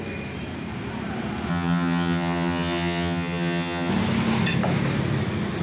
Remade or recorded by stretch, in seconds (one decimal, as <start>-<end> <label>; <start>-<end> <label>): 0.0-1.5 recorded; 1.5-3.9 remade; 3.9-5.6 recorded